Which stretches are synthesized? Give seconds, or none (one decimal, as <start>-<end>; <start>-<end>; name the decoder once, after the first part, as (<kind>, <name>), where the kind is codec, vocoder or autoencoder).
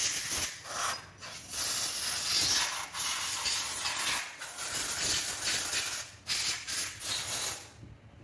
none